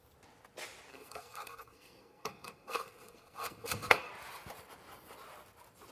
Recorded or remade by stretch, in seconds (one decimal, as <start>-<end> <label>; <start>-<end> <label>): 0.0-0.9 recorded; 0.9-4.1 remade; 4.1-5.9 recorded